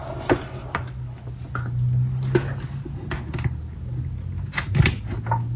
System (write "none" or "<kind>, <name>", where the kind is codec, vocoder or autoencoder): none